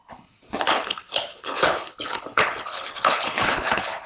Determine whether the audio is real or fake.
fake